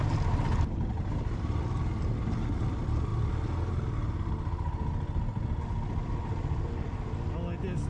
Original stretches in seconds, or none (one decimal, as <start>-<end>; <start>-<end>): 0.0-7.9